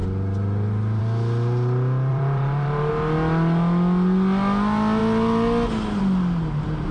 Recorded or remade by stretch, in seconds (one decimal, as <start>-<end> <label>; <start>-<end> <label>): 0.0-2.1 recorded; 2.1-2.9 remade; 2.9-6.9 recorded